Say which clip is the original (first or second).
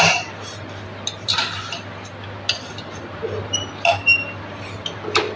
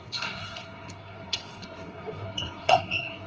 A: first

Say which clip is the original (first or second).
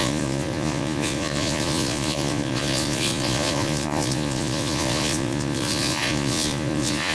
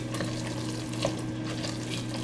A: second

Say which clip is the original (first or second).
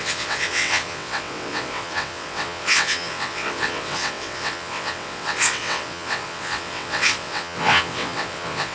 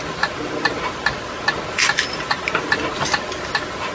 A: second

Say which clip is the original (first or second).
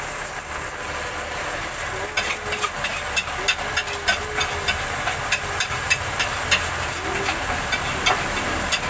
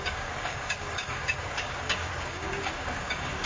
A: first